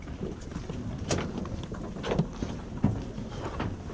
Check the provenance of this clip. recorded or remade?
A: remade